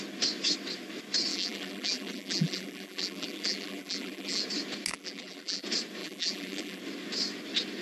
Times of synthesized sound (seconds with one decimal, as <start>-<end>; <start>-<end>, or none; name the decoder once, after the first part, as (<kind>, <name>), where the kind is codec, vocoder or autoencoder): 1.3-4.4 (vocoder, BigVGAN v2); 4.9-5.6; 6.0-6.8